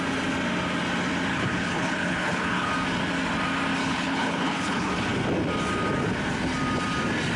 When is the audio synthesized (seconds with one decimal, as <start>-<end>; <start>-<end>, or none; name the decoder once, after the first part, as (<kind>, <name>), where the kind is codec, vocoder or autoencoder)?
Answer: 1.3-2.7 (codec, HILCodec); 3.8-4.9